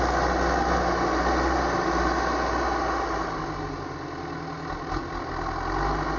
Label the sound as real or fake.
real